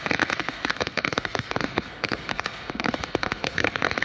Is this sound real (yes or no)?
no